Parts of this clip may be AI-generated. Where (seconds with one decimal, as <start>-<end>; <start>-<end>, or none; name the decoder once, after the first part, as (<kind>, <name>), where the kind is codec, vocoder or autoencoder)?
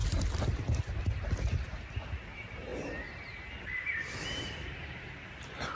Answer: none